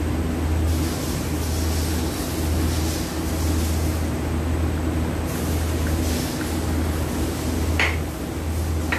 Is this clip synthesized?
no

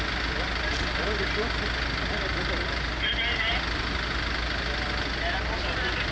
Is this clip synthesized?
no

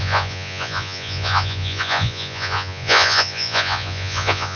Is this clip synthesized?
yes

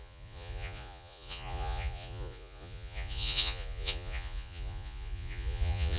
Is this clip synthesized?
yes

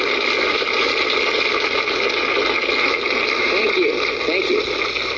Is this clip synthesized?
no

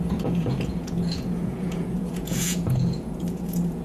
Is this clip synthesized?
yes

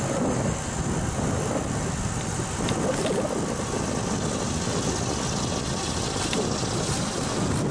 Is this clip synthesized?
no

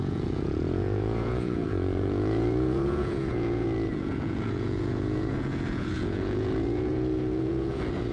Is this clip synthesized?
yes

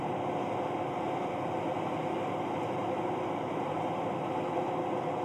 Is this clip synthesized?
no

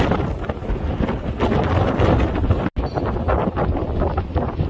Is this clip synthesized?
no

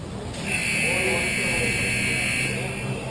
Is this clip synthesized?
no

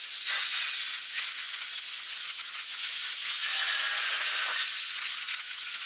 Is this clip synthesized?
yes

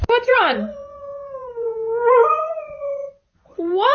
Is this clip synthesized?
yes